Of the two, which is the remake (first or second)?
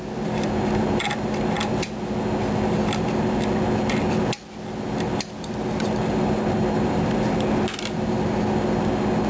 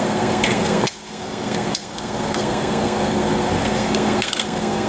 second